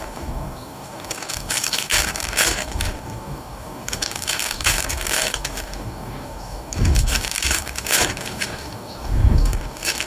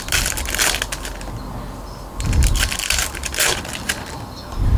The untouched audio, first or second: second